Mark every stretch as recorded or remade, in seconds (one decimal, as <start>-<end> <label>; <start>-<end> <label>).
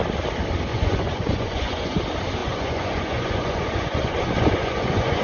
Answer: 0.0-0.7 recorded; 0.7-2.0 remade; 2.0-2.4 recorded; 2.4-5.2 remade